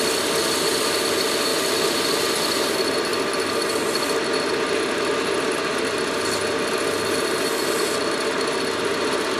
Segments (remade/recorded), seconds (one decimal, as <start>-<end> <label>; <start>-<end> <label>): 0.0-9.4 recorded